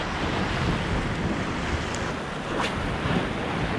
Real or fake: real